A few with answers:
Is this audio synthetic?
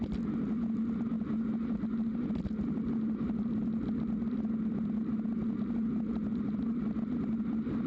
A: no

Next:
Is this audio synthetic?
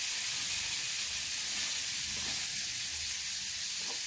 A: no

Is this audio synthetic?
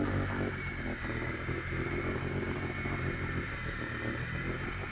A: yes